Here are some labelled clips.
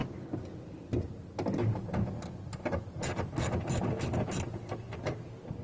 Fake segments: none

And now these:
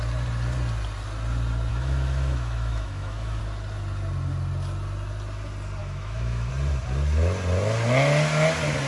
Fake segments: 1.7-3.4 (autoencoder, DAC-VAE); 5.8-6.5

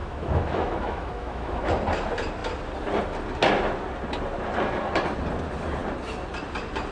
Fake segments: 0.0-1.7 (autoencoder, DAC-VAE)